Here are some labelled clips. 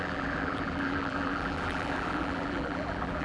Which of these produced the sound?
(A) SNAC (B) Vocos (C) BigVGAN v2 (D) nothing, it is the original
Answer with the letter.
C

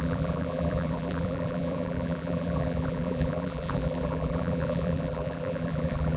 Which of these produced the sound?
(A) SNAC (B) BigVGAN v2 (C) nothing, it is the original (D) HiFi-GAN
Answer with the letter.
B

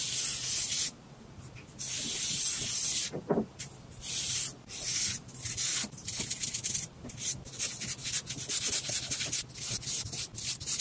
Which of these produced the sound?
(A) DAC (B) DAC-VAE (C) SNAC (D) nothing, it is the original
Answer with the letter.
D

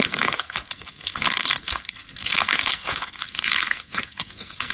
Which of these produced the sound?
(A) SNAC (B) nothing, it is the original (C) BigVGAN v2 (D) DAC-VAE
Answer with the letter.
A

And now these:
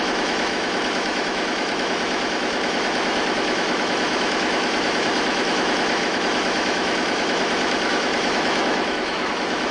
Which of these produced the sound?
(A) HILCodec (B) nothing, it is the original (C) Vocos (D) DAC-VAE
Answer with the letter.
D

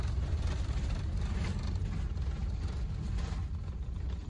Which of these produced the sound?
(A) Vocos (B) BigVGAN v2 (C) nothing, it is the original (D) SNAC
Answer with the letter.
C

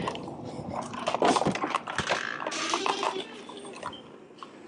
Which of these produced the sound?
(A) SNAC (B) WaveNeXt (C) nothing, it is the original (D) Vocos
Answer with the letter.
C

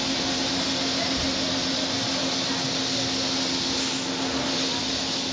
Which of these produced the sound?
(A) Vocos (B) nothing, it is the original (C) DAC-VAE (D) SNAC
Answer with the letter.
B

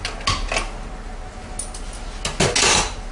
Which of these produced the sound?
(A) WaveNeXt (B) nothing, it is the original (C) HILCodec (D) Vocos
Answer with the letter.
B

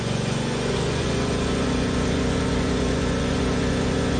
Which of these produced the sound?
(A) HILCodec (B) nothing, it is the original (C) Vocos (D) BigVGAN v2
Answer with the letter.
C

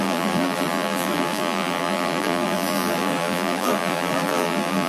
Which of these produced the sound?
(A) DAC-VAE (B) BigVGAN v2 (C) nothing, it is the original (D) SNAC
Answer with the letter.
B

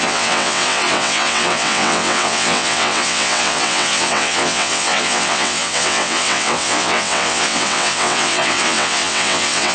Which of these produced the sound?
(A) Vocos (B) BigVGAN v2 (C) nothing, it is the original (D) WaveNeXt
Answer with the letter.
D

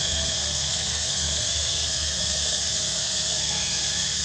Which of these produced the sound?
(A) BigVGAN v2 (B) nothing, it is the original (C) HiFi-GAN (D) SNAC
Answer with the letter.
D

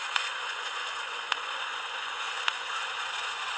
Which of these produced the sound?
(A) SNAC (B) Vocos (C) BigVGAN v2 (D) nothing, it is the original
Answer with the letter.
B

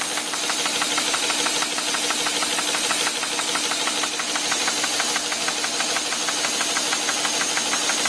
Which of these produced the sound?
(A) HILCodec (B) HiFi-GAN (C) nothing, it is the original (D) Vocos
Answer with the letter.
C